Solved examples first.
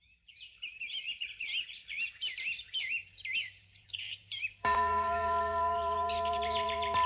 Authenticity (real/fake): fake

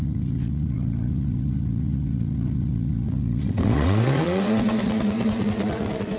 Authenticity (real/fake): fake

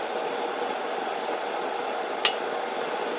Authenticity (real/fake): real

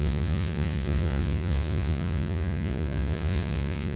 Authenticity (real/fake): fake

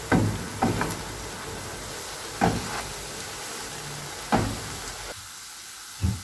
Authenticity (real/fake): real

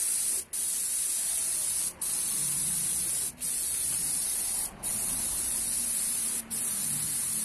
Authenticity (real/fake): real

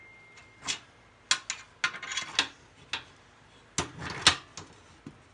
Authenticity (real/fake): real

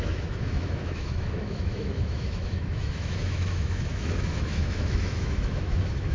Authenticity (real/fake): fake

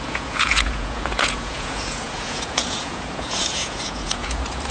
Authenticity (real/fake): fake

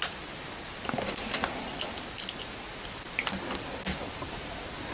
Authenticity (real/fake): real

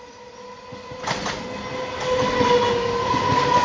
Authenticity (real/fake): real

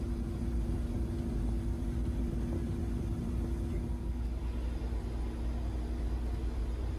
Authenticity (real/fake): real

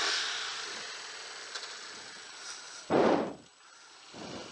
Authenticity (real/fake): real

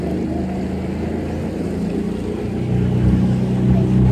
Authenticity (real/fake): real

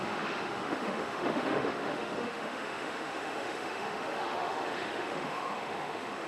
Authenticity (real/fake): fake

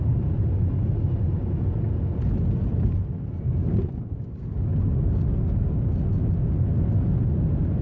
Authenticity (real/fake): real